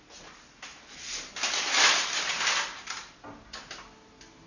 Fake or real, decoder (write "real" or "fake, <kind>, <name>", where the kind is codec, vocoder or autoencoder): real